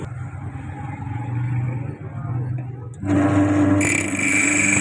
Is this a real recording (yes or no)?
yes